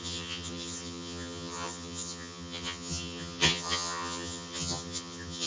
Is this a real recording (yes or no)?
no